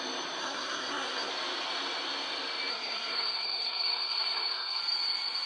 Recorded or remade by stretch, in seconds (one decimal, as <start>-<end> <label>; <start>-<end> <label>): 0.0-0.4 recorded; 0.4-1.3 remade; 1.3-2.7 recorded; 2.7-4.8 remade; 4.8-5.5 recorded